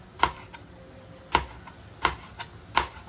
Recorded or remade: recorded